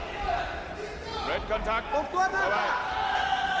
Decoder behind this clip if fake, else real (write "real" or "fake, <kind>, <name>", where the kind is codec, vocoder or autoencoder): real